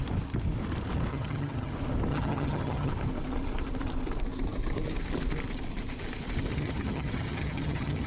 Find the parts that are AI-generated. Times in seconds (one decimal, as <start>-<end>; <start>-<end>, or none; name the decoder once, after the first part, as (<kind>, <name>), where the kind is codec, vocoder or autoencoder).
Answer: 1.1-1.7 (vocoder, HiFi-GAN); 2.1-2.9; 6.5-8.1